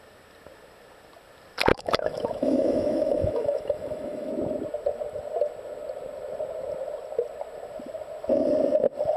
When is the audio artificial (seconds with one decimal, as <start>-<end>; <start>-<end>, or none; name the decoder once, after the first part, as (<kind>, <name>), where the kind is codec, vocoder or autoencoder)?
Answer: 1.7-4.3 (autoencoder, DAC-VAE)